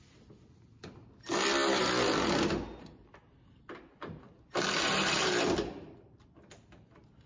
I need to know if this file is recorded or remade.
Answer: recorded